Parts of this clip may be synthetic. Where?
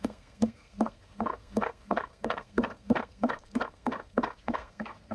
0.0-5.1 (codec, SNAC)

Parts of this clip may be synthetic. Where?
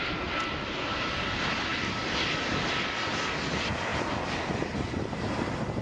none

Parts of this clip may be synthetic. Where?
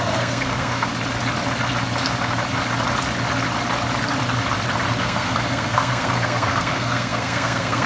0.0-0.9 (codec, SNAC); 5.0-7.9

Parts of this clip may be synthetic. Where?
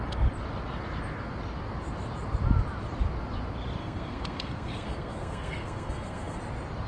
3.8-6.4 (codec, SNAC)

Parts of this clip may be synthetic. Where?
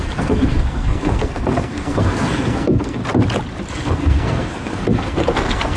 0.0-3.0 (codec, SNAC); 3.7-5.8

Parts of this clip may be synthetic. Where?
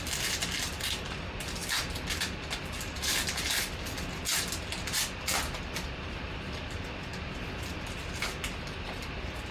none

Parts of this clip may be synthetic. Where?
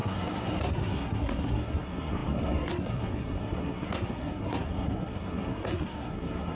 0.0-6.6 (codec, SNAC)